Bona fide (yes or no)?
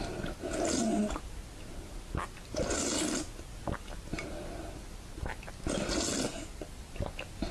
yes